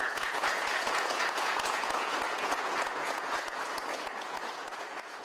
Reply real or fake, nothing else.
fake